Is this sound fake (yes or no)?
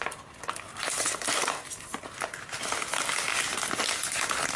no